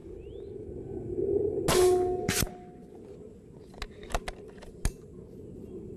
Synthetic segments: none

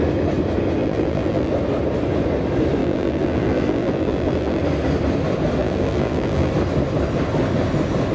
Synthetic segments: 0.8-1.5 (vocoder, BigVGAN v2); 2.8-4.6; 5.6-6.5

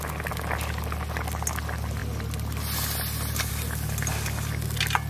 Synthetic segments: none

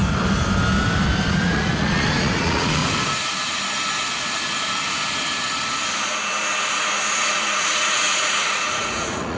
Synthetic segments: 1.3-2.8 (vocoder, Vocos); 7.2-9.4

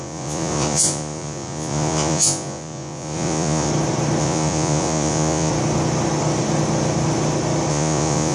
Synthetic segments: 0.0-3.7 (vocoder, Vocos); 4.2-5.5; 7.7-8.3

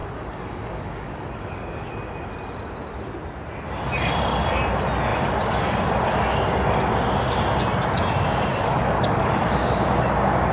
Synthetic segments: 0.0-1.9 (codec, DAC); 8.5-9.4

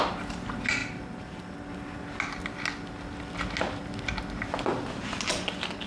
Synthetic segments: 0.8-1.7 (vocoder, BigVGAN v2)

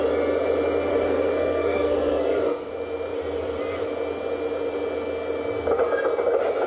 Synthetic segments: 0.9-2.7 (codec, SNAC)